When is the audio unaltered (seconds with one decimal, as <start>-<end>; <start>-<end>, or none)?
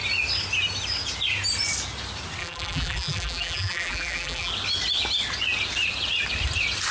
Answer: 0.0-2.4; 4.5-6.9